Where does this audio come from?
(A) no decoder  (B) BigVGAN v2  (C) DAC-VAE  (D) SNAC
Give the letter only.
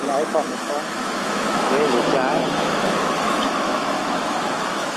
C